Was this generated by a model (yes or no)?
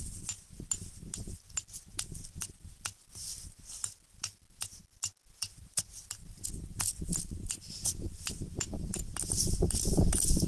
no